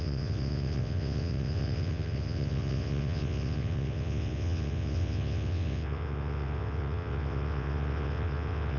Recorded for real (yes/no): no